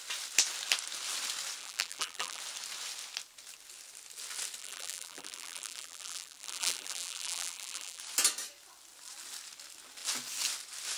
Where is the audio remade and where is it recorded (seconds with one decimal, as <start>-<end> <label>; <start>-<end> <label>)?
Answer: 0.0-1.6 recorded; 1.6-2.4 remade; 2.4-4.6 recorded; 4.6-8.0 remade; 8.0-11.0 recorded